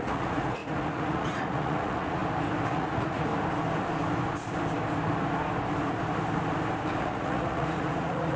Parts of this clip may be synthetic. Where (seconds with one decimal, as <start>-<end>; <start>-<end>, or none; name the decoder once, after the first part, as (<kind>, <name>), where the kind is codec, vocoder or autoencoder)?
0.0-2.2 (vocoder, Vocos); 2.7-3.3; 7.0-8.4